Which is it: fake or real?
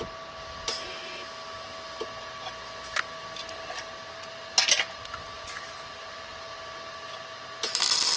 real